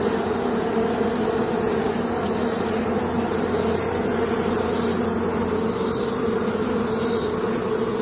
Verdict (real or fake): real